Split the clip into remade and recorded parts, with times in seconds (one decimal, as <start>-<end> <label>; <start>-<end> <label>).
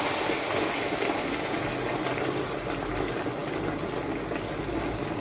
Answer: 0.0-5.2 recorded